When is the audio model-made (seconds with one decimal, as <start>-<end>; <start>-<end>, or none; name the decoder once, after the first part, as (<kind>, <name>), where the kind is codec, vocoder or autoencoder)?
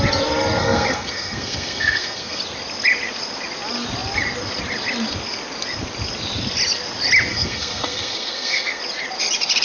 0.6-2.4 (codec, SNAC); 7.3-8.8